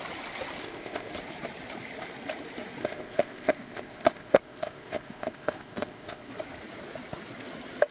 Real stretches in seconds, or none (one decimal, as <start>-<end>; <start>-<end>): 0.0-0.6; 1.1-2.8; 6.3-7.9